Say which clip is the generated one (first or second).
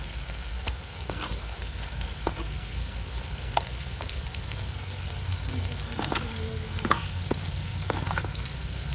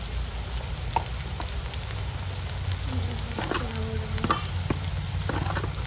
first